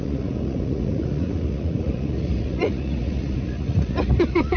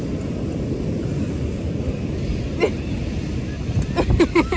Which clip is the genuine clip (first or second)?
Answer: second